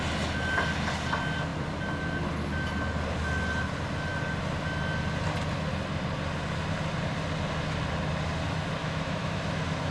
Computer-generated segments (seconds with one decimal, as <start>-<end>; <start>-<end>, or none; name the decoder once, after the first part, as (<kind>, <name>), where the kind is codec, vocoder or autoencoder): 8.8-9.4 (autoencoder, DAC-VAE)